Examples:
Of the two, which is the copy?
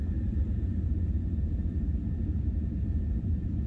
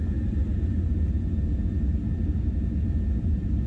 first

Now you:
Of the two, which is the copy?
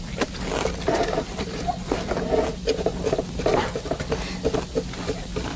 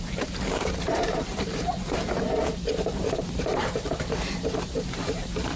second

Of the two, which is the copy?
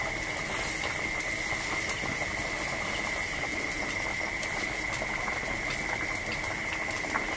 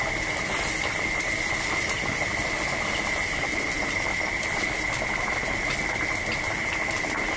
second